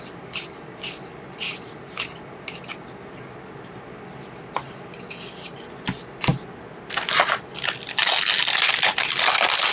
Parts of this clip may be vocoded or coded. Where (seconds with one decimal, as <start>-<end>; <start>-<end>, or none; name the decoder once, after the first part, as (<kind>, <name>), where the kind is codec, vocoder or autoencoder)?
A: none